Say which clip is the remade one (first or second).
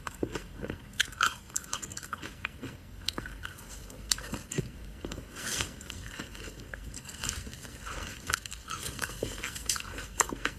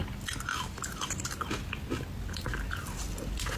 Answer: first